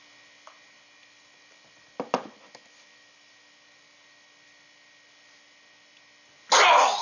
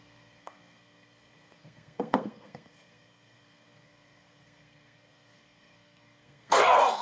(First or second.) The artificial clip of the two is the second